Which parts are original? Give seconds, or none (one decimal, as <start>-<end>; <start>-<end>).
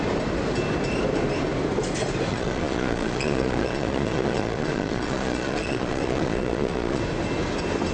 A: 0.0-2.3; 7.0-7.9